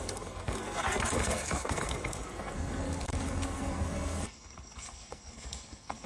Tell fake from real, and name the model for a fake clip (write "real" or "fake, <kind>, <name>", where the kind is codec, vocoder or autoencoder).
fake, codec, SNAC